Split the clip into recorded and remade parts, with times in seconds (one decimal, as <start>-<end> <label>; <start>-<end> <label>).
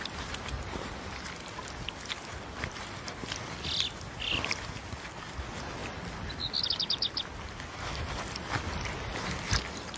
0.0-10.0 recorded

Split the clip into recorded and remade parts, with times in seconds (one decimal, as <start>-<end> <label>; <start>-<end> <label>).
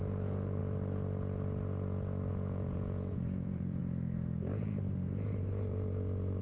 0.0-0.6 remade; 0.6-2.3 recorded; 2.3-3.8 remade; 3.8-6.4 recorded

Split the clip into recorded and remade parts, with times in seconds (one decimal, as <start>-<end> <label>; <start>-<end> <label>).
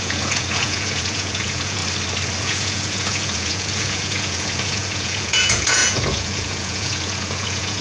0.0-1.8 remade; 1.8-2.4 recorded; 2.4-7.8 remade